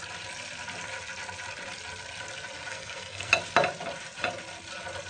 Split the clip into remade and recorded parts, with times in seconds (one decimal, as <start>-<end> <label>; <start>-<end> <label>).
0.0-2.7 recorded; 2.7-3.3 remade; 3.3-5.1 recorded

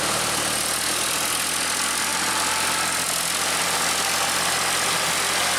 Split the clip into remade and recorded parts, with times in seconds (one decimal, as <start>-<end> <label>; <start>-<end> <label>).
0.0-5.6 recorded

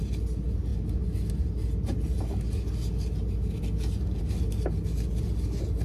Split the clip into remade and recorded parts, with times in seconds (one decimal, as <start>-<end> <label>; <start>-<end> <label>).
0.0-5.8 recorded

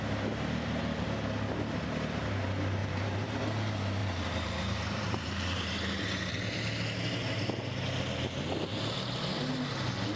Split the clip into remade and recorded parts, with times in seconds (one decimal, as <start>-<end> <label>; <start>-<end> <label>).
0.0-2.8 recorded; 2.8-3.4 remade; 3.4-4.0 recorded; 4.0-6.3 remade; 6.3-10.2 recorded

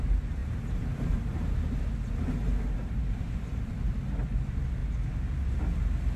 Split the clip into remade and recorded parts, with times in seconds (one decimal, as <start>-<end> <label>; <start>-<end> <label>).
0.0-0.4 recorded; 0.4-1.8 remade; 1.8-2.8 recorded; 2.8-4.0 remade; 4.0-4.8 recorded; 4.8-5.6 remade; 5.6-6.2 recorded

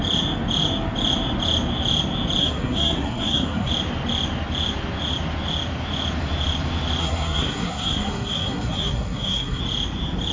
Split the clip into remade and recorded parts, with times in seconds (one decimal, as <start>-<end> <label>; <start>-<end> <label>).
0.0-2.4 recorded; 2.4-3.7 remade; 3.7-7.0 recorded; 7.0-9.6 remade; 9.6-10.3 recorded